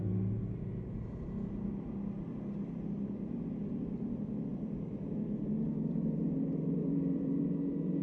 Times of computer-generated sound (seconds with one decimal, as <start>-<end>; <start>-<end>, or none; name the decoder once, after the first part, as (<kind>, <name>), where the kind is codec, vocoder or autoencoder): 4.5-5.1 (vocoder, BigVGAN v2); 6.8-7.4